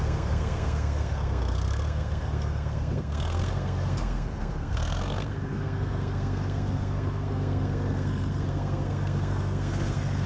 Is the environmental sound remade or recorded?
remade